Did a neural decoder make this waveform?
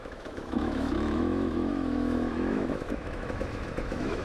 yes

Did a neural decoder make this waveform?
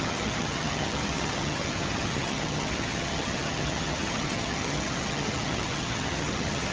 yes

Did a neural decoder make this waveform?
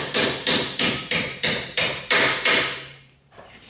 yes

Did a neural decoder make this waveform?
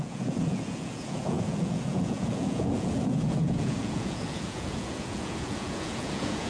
yes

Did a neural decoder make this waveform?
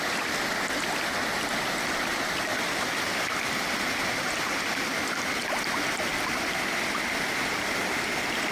no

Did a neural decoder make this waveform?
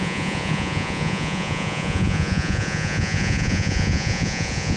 yes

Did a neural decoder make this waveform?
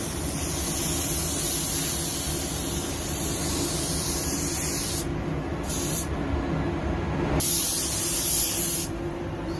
no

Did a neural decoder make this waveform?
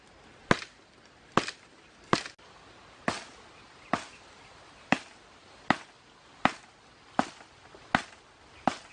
no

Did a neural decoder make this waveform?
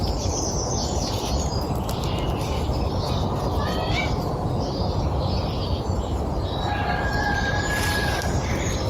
no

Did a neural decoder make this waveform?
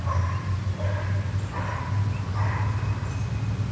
no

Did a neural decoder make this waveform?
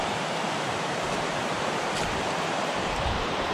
yes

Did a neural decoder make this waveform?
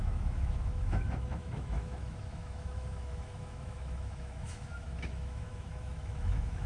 yes